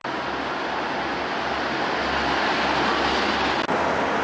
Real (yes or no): yes